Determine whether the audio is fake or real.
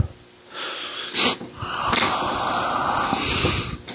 real